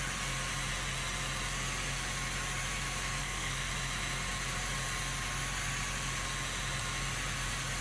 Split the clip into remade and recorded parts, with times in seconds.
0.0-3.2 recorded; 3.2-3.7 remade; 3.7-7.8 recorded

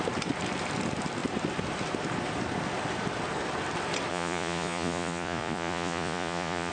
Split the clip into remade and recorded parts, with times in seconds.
0.0-4.1 recorded; 4.1-6.7 remade

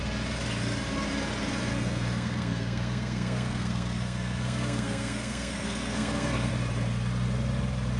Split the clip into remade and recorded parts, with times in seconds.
0.0-1.7 recorded; 1.7-6.5 remade; 6.5-8.0 recorded